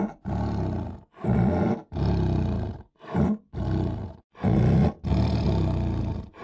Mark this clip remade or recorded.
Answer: recorded